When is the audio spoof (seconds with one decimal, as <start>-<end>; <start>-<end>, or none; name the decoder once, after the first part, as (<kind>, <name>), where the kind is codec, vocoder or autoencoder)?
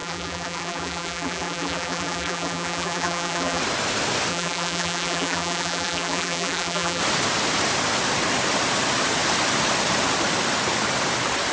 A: 0.0-3.6 (vocoder, BigVGAN v2); 4.3-7.0